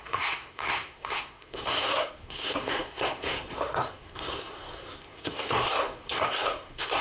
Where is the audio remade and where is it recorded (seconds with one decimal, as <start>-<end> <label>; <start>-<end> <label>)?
0.0-7.0 remade